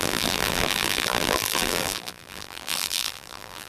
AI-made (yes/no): yes